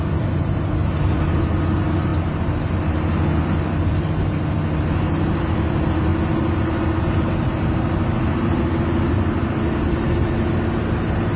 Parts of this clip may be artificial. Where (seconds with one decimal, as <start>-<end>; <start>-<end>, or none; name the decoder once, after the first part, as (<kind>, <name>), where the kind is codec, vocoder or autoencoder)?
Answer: none

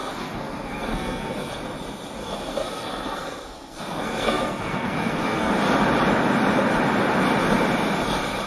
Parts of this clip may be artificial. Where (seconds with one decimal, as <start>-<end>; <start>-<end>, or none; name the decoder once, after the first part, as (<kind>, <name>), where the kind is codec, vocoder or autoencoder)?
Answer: 0.0-1.6 (codec, SNAC); 2.2-5.5

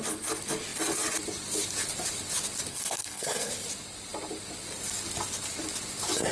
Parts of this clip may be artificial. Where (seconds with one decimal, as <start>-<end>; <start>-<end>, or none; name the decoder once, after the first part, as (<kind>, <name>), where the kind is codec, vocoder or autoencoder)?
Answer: 2.7-3.5 (codec, SNAC)

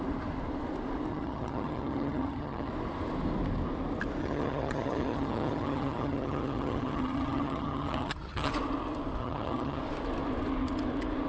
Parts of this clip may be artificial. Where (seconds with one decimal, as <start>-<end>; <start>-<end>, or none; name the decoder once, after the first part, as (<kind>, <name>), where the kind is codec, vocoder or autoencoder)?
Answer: 1.1-2.7 (vocoder, HiFi-GAN); 4.2-8.5; 9.2-9.8

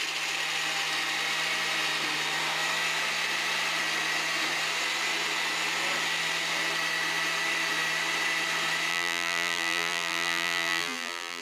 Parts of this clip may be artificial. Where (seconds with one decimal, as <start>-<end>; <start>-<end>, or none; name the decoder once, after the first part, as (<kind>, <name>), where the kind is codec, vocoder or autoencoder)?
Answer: 8.9-11.4 (vocoder, BigVGAN v2)